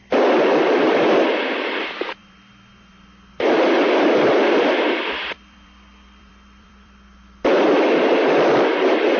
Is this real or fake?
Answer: fake